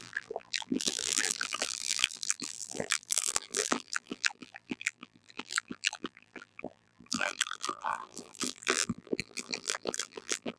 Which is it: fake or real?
fake